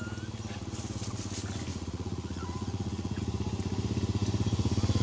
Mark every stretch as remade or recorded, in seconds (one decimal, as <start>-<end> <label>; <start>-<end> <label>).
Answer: 0.0-1.7 recorded; 1.7-3.2 remade; 3.2-5.0 recorded